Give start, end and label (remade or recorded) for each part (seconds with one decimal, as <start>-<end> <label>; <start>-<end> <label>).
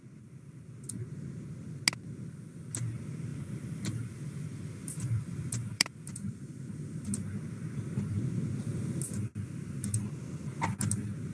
0.0-3.3 recorded; 3.3-6.0 remade; 6.0-11.3 recorded